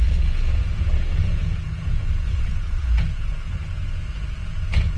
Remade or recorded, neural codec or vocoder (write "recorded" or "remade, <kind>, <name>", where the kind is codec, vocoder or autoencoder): remade, vocoder, Vocos